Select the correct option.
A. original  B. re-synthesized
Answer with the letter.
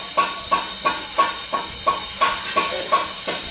A